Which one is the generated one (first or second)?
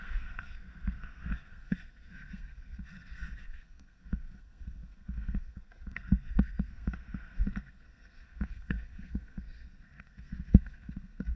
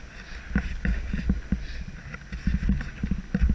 first